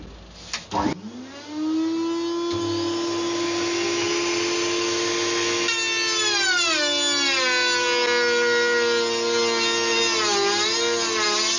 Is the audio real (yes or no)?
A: yes